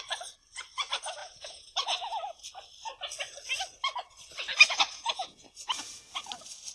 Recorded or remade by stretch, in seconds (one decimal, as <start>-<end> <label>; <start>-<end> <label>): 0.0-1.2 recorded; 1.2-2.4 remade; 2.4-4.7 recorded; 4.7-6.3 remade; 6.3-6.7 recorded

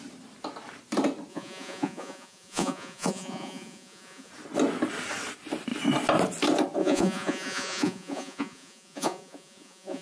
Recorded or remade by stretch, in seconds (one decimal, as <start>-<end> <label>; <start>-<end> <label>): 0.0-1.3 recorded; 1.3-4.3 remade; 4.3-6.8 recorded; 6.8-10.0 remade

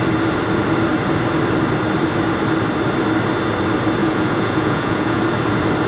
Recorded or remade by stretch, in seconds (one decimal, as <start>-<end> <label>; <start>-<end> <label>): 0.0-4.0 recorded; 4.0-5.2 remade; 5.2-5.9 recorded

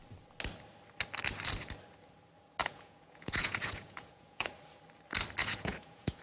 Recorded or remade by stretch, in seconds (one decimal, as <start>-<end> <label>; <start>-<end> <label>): 0.0-2.6 recorded; 2.6-4.5 remade; 4.5-5.4 recorded; 5.4-6.2 remade